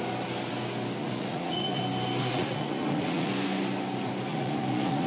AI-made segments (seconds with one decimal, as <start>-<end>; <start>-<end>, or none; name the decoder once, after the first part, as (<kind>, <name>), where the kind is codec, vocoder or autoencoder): 1.0-1.8 (vocoder, Vocos); 2.2-3.3; 4.3-5.1